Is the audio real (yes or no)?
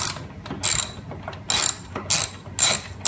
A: yes